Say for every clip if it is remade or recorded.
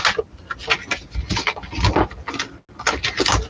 recorded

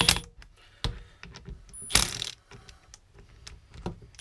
recorded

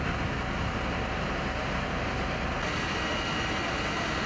recorded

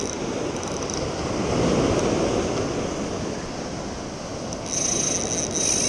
recorded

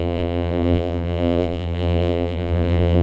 remade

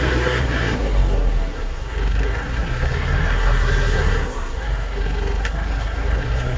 remade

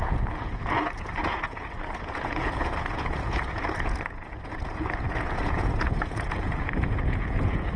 remade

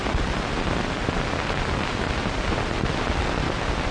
recorded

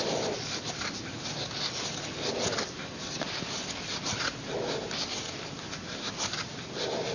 recorded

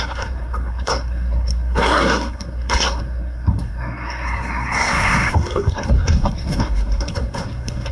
remade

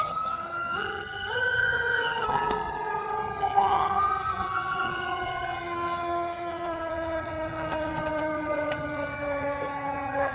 remade